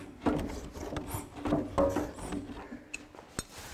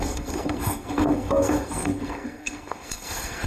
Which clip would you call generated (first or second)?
second